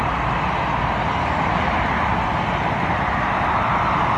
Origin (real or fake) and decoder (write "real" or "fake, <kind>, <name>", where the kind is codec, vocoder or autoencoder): real